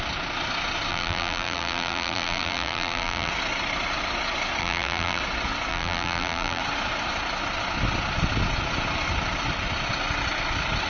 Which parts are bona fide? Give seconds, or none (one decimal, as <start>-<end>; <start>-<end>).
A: 0.0-0.9; 3.3-4.6; 5.2-5.7; 6.6-10.9